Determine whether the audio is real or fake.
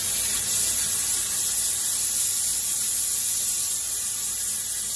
real